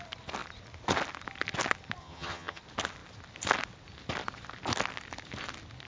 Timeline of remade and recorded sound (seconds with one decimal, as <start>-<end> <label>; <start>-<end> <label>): 0.0-2.0 recorded; 2.0-2.6 remade; 2.6-5.9 recorded